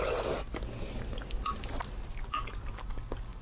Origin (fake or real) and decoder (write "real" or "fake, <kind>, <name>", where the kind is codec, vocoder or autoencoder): real